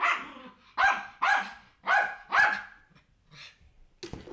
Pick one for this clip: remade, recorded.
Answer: recorded